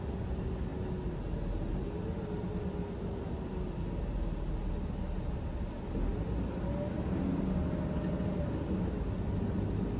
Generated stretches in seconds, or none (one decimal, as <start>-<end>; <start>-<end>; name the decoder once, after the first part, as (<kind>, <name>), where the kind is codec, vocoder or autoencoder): none